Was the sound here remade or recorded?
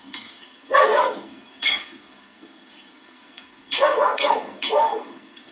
remade